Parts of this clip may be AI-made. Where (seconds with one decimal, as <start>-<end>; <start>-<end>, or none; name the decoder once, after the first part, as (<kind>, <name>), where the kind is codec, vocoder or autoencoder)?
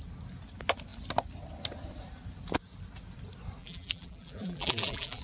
3.6-5.2 (vocoder, BigVGAN v2)